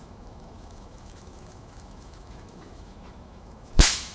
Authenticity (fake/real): fake